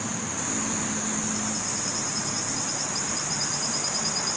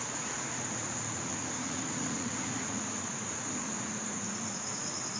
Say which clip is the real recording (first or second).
first